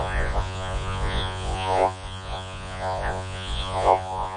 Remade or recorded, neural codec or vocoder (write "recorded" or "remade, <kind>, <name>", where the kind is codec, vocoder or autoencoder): remade, vocoder, Vocos